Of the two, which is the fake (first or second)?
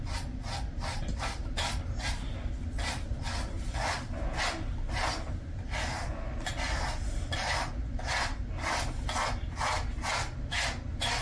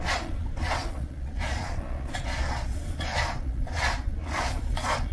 second